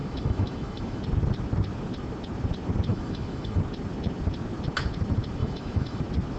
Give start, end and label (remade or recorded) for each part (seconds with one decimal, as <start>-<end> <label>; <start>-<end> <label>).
0.0-1.0 remade; 1.0-2.9 recorded; 2.9-3.6 remade; 3.6-5.4 recorded; 5.4-6.0 remade; 6.0-6.4 recorded